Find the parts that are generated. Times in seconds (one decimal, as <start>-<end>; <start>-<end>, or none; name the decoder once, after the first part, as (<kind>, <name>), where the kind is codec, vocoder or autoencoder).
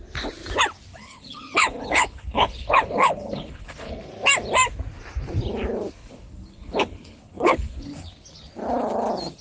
0.9-4.1 (codec, HILCodec); 6.0-8.1